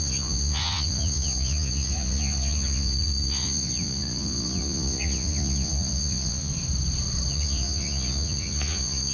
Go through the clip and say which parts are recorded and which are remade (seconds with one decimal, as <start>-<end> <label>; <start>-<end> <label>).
0.0-6.5 remade; 6.5-7.3 recorded; 7.3-9.1 remade